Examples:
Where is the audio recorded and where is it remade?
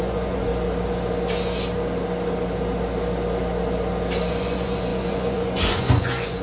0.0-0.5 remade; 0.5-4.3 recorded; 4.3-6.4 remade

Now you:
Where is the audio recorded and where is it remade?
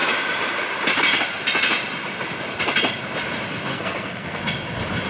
0.0-3.7 recorded; 3.7-4.4 remade; 4.4-5.1 recorded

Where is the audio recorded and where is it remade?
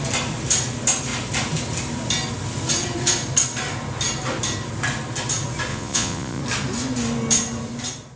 0.0-5.7 recorded; 5.7-6.4 remade; 6.4-8.2 recorded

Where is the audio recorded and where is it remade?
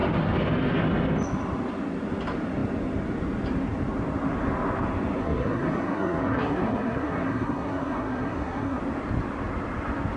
0.0-5.2 recorded; 5.2-8.8 remade; 8.8-10.2 recorded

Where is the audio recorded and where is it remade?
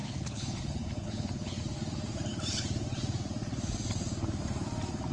0.0-1.6 remade; 1.6-5.1 recorded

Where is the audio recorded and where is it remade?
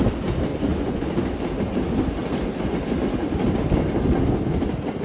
0.0-0.5 recorded; 0.5-1.0 remade; 1.0-5.0 recorded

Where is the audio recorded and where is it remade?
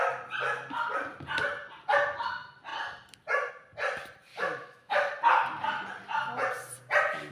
0.0-4.3 recorded; 4.3-4.9 remade; 4.9-7.3 recorded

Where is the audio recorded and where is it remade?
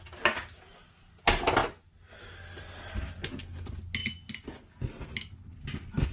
0.0-6.1 recorded